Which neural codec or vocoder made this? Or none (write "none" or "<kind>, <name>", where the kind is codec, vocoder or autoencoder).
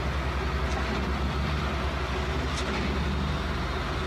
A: none